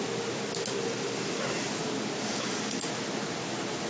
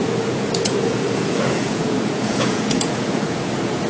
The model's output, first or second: second